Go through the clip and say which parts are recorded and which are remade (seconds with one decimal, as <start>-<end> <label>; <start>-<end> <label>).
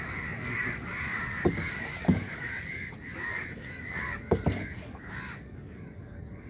0.0-6.5 remade